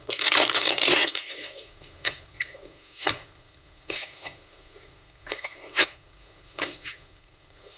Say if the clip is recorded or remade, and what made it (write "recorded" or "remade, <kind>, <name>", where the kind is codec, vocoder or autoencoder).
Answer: remade, codec, SNAC